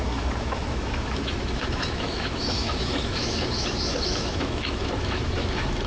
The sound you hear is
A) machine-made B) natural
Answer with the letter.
A